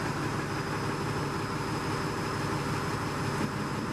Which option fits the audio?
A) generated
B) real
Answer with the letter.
B